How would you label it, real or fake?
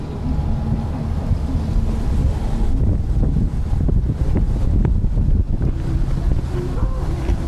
real